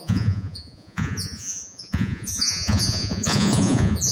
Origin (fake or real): fake